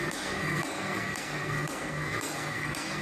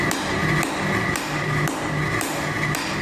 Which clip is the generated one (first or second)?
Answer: first